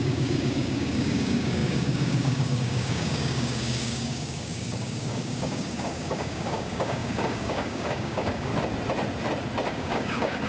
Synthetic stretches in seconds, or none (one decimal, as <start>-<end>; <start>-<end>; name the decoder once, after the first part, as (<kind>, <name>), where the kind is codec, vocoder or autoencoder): 0.0-8.5 (codec, DAC); 9.7-10.5